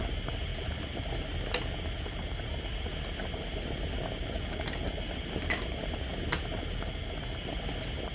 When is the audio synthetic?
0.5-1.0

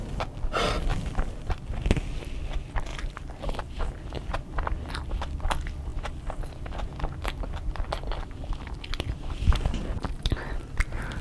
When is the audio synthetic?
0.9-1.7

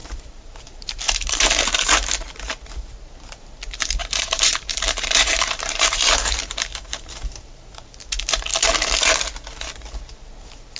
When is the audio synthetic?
0.0-2.4; 4.0-7.9

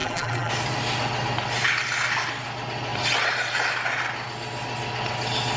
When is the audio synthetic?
0.0-0.5